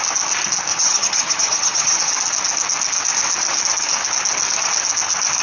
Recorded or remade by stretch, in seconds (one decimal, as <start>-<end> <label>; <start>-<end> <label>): 0.0-0.7 recorded; 0.7-2.0 remade; 2.0-5.4 recorded